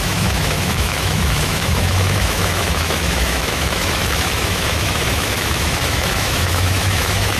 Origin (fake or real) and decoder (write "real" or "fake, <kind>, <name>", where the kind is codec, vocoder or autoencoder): fake, autoencoder, DAC-VAE